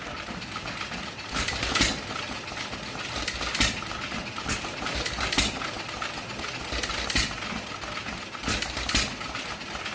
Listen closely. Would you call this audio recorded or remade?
recorded